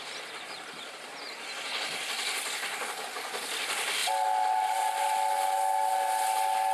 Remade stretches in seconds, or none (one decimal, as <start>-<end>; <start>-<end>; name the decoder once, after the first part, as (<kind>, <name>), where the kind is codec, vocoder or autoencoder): none

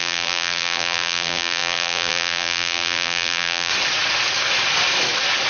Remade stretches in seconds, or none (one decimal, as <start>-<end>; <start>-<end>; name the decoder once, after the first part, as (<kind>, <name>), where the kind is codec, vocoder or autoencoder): 0.0-3.7 (vocoder, BigVGAN v2)

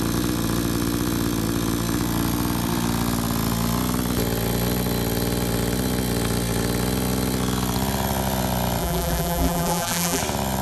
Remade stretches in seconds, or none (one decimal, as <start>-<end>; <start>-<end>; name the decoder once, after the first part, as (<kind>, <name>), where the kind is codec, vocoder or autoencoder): 8.8-10.2 (vocoder, BigVGAN v2)

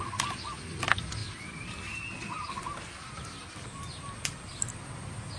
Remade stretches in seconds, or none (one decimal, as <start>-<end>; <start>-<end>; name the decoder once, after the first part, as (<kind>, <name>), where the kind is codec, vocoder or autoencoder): 1.2-4.4 (vocoder, BigVGAN v2)

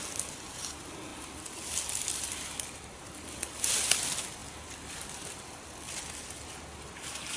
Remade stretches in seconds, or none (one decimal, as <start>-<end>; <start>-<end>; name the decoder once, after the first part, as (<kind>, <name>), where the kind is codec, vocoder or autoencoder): 1.1-3.5 (vocoder, BigVGAN v2); 4.4-6.0

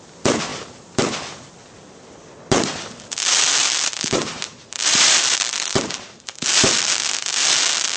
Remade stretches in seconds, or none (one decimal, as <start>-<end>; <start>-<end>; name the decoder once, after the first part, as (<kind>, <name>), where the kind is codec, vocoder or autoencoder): 3.6-6.7 (vocoder, BigVGAN v2)

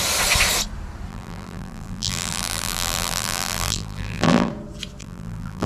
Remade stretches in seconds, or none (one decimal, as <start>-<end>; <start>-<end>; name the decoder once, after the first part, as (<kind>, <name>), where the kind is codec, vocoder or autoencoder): 1.1-4.5 (vocoder, BigVGAN v2); 5.0-5.7